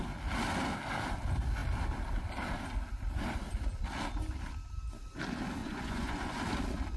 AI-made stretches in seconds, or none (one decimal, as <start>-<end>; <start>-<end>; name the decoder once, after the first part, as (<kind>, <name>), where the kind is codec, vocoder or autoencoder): 5.6-6.4 (vocoder, Vocos)

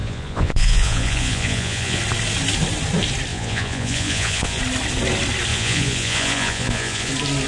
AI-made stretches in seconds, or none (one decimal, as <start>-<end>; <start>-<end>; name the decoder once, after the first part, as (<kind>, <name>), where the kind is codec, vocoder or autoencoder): 0.0-2.0 (vocoder, Vocos); 3.3-4.6; 5.5-7.1